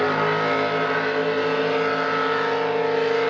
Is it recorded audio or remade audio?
recorded